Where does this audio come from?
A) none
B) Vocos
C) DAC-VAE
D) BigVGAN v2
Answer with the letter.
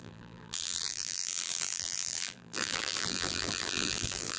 D